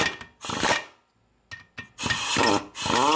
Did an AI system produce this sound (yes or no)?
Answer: no